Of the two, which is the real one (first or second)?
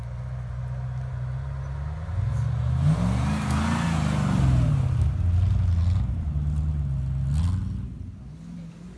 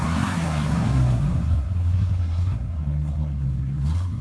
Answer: first